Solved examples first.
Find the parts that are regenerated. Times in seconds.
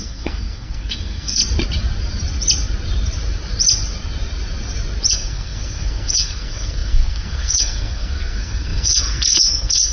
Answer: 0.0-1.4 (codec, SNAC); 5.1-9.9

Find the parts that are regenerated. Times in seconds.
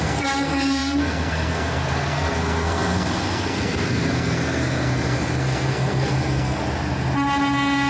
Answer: 0.0-6.6 (codec, SNAC)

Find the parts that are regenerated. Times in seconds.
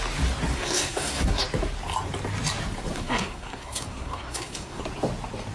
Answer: 0.5-1.4 (codec, SNAC); 2.9-4.8